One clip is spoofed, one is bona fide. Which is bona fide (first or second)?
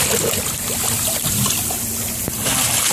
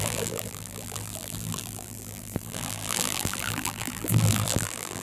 first